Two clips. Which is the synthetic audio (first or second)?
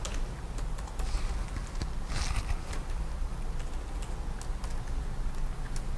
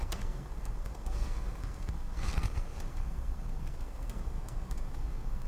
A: second